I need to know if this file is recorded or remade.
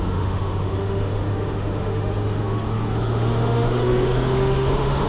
remade